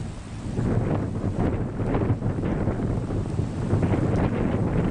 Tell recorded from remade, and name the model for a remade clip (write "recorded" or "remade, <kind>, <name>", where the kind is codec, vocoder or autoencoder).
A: recorded